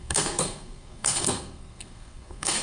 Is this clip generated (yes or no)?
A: yes